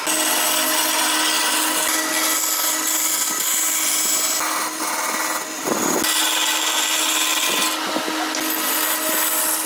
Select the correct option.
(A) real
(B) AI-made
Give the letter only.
A